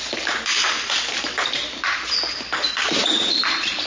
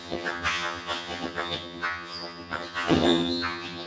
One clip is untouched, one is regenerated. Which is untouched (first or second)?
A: first